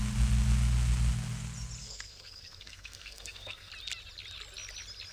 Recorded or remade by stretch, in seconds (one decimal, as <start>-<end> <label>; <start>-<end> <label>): 0.0-1.8 recorded; 1.8-3.7 remade; 3.7-5.1 recorded